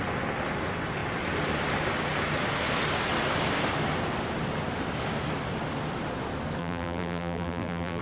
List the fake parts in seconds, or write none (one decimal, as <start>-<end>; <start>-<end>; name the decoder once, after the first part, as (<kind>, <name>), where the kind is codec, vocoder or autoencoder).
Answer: 6.6-8.0 (vocoder, BigVGAN v2)